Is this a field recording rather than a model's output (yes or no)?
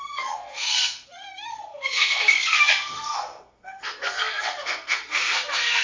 no